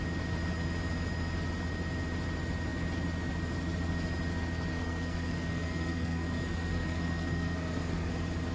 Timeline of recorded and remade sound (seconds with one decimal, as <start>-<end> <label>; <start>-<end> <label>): 0.0-4.7 recorded; 4.7-8.1 remade; 8.1-8.5 recorded